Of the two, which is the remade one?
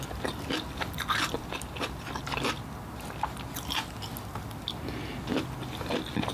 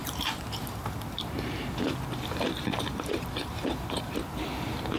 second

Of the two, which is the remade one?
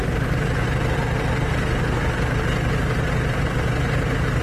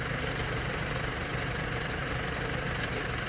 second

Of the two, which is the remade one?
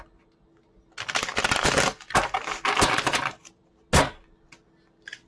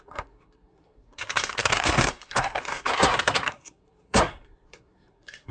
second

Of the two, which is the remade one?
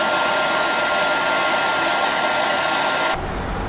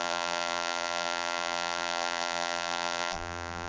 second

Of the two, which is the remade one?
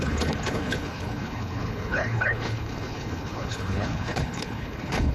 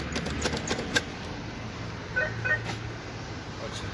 first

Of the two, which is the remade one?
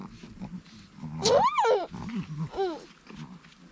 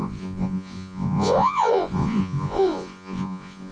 second